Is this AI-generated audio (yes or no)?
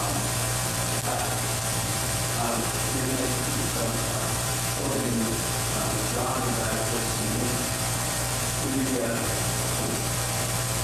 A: yes